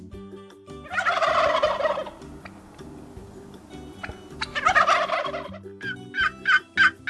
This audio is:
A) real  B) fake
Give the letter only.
A